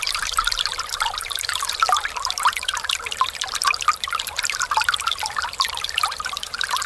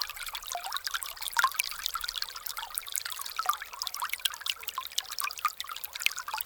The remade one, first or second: first